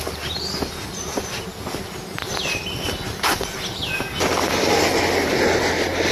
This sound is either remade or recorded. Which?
recorded